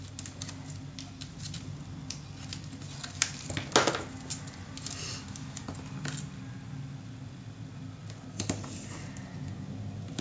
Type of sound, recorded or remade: recorded